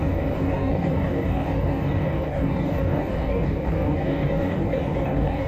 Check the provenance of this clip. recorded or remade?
remade